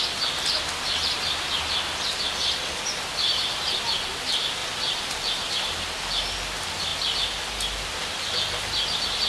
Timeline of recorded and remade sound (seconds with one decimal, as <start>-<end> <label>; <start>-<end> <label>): 0.0-4.6 recorded; 4.6-5.5 remade; 5.5-9.3 recorded